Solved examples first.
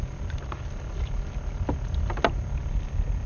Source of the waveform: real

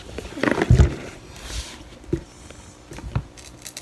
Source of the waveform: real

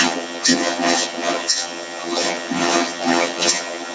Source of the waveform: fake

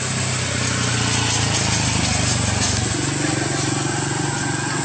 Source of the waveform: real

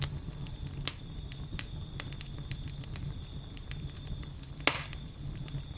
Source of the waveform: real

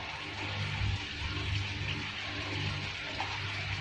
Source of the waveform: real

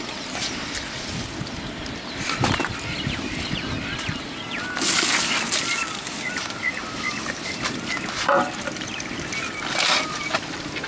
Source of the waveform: real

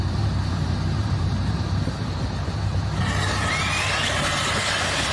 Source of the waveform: fake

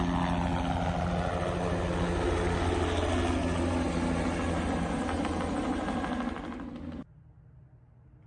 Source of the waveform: real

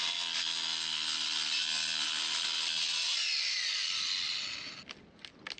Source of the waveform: real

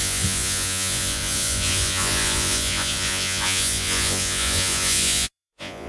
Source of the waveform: fake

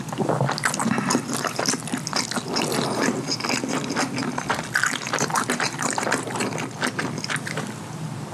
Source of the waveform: real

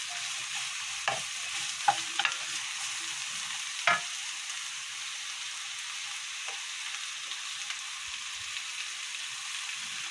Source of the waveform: real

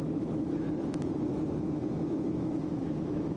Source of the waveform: fake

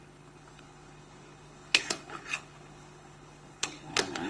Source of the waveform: fake